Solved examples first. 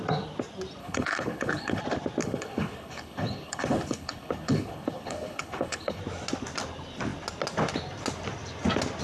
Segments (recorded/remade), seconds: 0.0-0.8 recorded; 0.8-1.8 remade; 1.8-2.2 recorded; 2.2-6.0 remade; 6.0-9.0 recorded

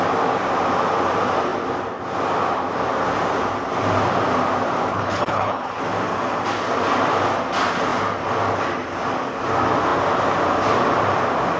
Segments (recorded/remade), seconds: 0.0-4.9 recorded; 4.9-5.8 remade; 5.8-11.6 recorded

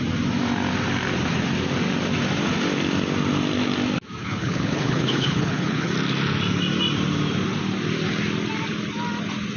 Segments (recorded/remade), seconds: 0.0-4.2 recorded; 4.2-5.9 remade; 5.9-9.6 recorded

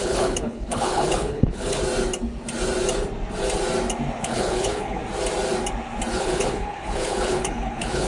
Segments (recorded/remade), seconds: 0.0-1.8 remade; 1.8-4.2 recorded; 4.2-5.0 remade; 5.0-6.2 recorded; 6.2-8.1 remade